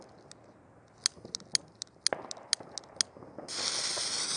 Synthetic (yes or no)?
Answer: no